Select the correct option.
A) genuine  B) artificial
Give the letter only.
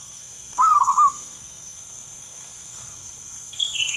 B